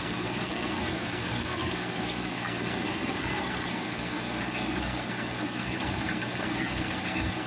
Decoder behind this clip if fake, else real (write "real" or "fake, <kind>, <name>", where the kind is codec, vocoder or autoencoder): fake, codec, SNAC